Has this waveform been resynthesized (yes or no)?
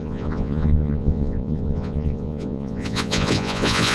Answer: yes